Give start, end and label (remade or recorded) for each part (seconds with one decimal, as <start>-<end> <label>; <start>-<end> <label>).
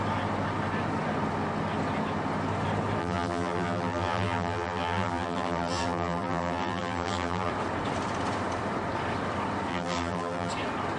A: 0.0-3.0 recorded; 3.0-7.5 remade; 7.5-9.7 recorded; 9.7-10.5 remade; 10.5-11.0 recorded